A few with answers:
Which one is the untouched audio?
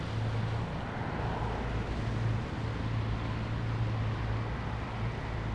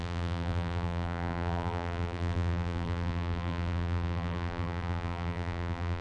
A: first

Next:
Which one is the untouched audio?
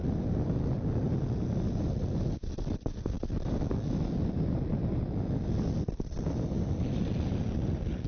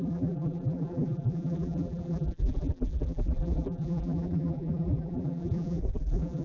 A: first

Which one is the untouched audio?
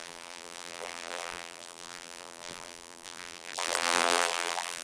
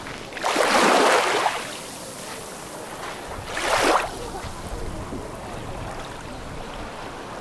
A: second